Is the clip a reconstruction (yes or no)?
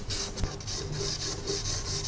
no